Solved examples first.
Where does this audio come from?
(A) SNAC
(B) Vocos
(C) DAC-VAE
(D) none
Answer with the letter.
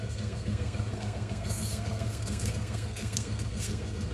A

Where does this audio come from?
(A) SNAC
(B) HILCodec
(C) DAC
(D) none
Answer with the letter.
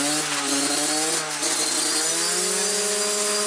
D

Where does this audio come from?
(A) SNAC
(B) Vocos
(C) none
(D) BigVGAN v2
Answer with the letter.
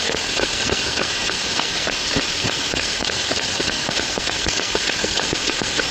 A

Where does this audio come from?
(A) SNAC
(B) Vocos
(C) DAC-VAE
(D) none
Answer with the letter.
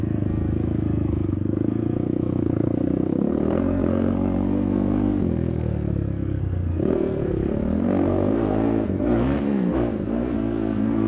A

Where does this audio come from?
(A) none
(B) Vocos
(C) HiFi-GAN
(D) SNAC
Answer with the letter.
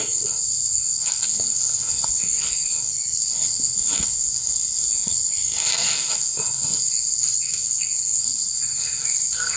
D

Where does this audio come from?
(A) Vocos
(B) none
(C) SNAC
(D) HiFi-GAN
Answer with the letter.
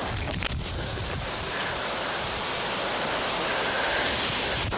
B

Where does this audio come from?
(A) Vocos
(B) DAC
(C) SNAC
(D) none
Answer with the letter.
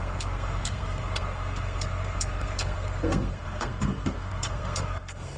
C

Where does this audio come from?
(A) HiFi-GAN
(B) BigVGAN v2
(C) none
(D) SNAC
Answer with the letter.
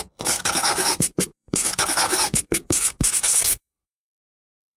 D